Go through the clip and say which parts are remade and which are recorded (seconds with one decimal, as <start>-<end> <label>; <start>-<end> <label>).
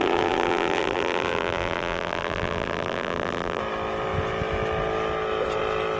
0.0-3.6 remade; 3.6-6.0 recorded